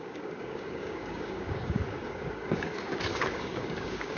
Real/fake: fake